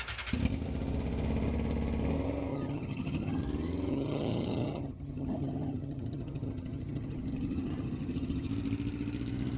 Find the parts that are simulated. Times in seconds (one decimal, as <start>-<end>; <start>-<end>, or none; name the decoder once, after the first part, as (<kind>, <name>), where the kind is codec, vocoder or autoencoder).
2.5-3.4 (vocoder, HiFi-GAN); 3.9-8.5

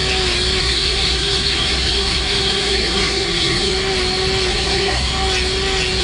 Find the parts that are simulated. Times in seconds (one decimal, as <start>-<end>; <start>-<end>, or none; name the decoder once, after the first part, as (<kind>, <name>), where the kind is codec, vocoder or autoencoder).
0.6-3.7 (codec, SNAC); 4.5-5.1

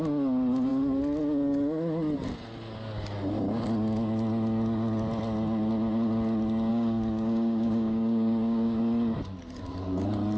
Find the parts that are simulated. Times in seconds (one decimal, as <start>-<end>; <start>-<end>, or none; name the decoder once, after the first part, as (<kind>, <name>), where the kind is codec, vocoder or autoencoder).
6.7-8.8 (codec, DAC)

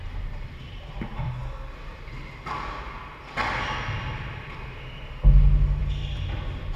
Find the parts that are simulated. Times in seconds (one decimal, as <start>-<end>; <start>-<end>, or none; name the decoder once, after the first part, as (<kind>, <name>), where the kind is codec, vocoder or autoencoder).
none

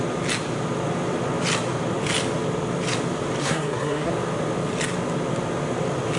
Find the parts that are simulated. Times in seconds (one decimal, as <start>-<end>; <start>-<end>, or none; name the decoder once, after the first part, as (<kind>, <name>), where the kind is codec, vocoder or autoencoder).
3.4-4.1 (codec, SNAC)